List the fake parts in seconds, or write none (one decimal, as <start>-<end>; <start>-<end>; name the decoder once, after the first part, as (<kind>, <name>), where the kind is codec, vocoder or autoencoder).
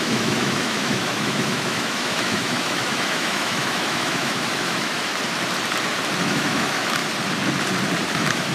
0.0-5.1 (autoencoder, DAC-VAE); 6.2-7.0; 8.1-8.5